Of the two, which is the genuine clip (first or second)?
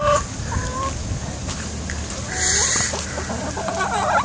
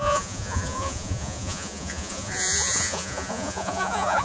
first